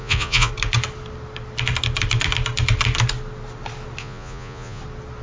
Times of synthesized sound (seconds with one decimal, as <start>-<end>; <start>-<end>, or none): 0.0-0.5; 4.0-4.8